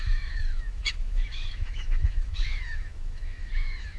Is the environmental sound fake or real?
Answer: fake